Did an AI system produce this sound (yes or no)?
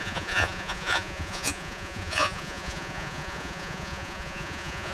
yes